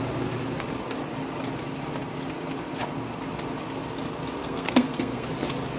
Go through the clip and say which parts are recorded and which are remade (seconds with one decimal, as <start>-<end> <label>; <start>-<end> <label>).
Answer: 0.0-4.4 recorded; 4.4-5.3 remade; 5.3-5.8 recorded

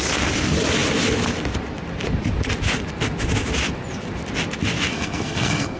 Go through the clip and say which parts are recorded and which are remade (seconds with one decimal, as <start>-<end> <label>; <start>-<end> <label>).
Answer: 0.0-4.9 recorded; 4.9-5.8 remade